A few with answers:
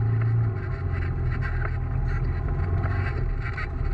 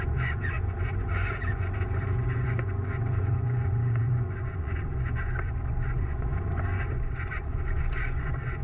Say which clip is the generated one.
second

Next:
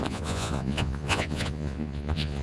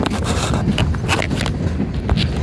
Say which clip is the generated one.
first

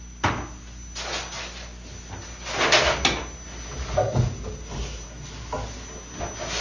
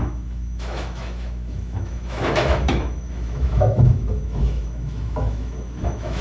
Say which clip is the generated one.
second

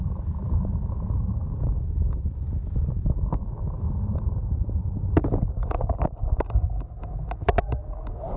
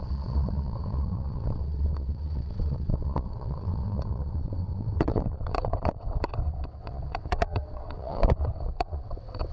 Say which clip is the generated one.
second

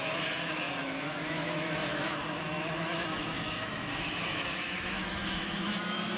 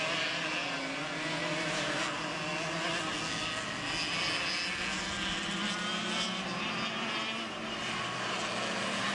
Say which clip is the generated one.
first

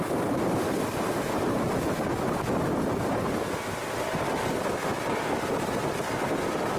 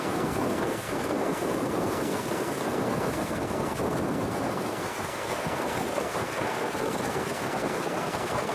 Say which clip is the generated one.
second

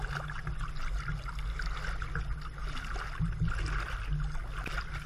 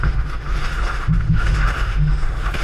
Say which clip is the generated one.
second